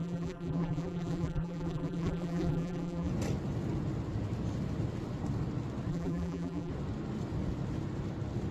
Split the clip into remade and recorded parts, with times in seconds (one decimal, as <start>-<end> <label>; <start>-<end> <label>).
0.0-3.1 remade; 3.1-5.9 recorded; 5.9-6.7 remade; 6.7-8.5 recorded